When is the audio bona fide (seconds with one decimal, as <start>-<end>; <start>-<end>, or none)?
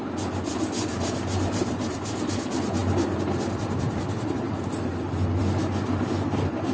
0.0-6.7